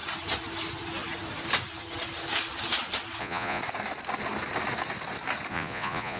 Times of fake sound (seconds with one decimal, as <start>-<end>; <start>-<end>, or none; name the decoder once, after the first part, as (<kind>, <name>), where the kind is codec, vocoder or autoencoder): 3.2-3.6 (vocoder, Vocos); 5.5-6.2

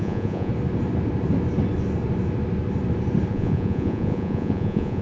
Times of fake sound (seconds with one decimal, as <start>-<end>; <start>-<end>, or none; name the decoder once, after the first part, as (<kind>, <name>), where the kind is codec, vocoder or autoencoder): 0.0-0.5 (vocoder, Vocos); 3.3-5.0

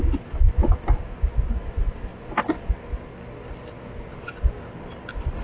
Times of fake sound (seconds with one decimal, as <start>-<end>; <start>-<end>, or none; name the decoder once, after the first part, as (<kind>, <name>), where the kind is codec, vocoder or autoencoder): none

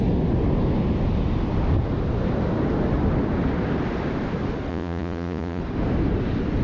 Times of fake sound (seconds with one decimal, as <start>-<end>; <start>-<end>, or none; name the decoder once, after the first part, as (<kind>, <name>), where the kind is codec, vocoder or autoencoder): 4.7-5.6 (vocoder, Vocos)

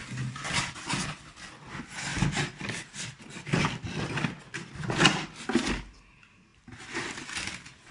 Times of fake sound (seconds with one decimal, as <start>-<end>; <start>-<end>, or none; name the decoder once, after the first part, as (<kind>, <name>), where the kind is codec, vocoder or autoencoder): none

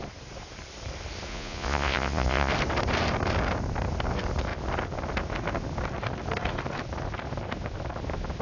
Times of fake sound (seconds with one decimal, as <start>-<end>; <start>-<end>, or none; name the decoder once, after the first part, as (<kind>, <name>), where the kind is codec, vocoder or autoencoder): 1.3-2.5 (vocoder, Vocos)